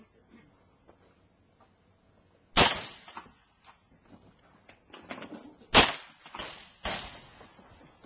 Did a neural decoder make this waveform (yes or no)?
no